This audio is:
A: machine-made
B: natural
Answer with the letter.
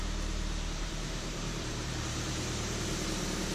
A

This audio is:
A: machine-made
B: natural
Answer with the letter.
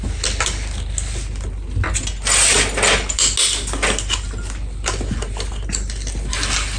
B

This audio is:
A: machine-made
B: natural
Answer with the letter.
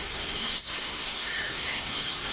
A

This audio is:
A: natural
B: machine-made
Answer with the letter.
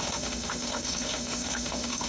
B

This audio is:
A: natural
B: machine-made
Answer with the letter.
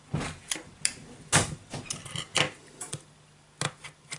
A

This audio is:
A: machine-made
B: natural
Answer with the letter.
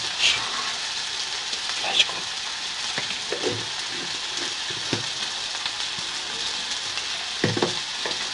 B